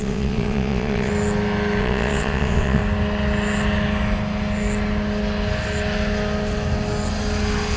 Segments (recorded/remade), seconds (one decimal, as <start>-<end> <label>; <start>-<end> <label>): 0.0-1.1 remade; 1.1-1.8 recorded; 1.8-2.8 remade; 2.8-7.8 recorded